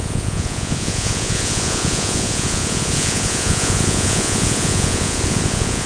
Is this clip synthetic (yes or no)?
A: yes